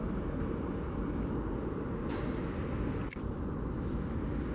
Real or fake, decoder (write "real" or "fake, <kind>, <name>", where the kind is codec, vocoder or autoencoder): real